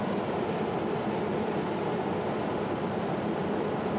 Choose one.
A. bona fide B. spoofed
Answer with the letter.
B